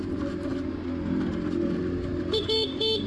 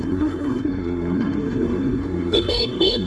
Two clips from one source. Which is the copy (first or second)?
second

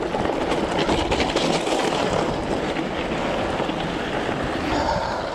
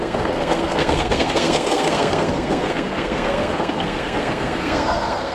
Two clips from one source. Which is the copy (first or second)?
second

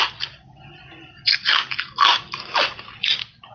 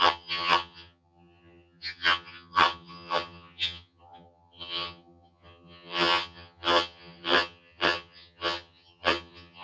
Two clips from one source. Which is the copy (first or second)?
second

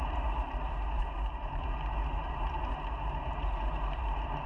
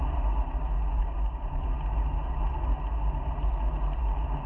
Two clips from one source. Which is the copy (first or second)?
first